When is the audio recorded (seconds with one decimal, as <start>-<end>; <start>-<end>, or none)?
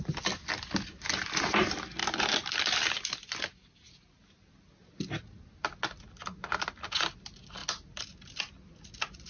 0.0-9.3